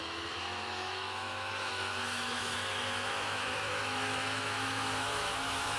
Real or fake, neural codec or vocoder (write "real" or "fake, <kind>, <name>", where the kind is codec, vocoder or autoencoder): fake, autoencoder, DAC-VAE